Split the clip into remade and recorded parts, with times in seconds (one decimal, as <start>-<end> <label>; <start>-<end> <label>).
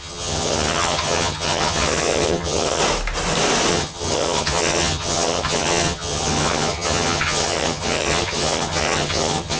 0.0-2.8 remade; 2.8-3.7 recorded; 3.7-9.6 remade